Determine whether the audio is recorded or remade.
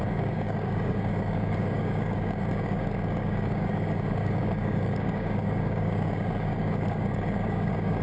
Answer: remade